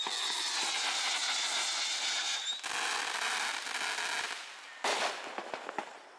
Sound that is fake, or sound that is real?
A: real